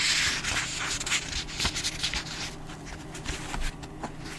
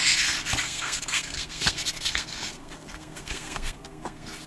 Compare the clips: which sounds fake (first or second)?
second